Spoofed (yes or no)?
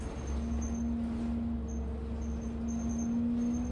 no